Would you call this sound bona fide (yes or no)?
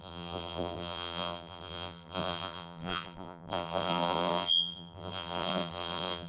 no